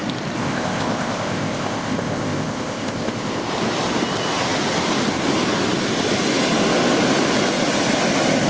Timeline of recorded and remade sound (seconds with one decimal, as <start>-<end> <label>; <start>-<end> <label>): 0.0-0.4 recorded; 0.4-3.5 remade; 3.5-8.5 recorded

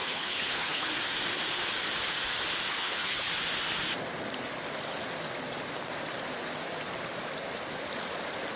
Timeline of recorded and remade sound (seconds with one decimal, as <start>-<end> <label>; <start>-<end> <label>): 0.0-0.9 remade; 0.9-2.7 recorded; 2.7-3.3 remade; 3.3-8.6 recorded

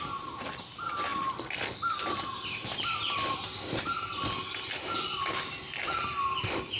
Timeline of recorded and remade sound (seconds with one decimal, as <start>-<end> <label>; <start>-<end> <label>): 0.0-6.8 recorded

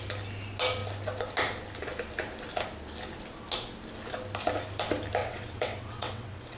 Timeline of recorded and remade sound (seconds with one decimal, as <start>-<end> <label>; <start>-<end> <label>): 0.0-5.2 recorded; 5.2-6.6 remade

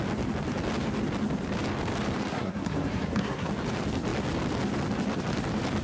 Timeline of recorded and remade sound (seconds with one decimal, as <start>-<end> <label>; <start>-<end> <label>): 0.0-2.3 recorded; 2.3-3.5 remade; 3.5-5.8 recorded

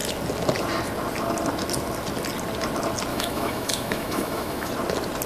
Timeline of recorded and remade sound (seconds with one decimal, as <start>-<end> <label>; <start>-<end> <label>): 0.0-3.1 recorded; 3.1-4.7 remade; 4.7-5.3 recorded

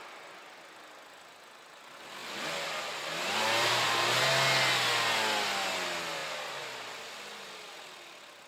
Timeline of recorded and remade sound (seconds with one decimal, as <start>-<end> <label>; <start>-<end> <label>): 0.0-2.2 recorded; 2.2-4.3 remade; 4.3-6.2 recorded; 6.2-7.1 remade; 7.1-8.5 recorded

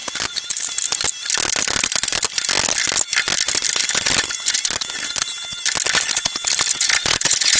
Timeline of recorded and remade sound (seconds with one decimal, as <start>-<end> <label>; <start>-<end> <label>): 0.0-6.7 recorded; 6.7-7.6 remade